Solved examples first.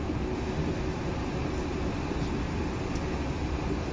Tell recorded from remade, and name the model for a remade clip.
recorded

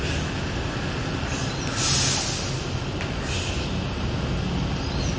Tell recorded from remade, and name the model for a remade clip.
recorded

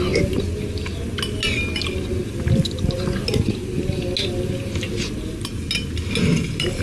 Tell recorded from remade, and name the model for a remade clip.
recorded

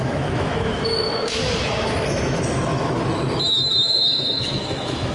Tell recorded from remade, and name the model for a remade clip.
remade, autoencoder, DAC-VAE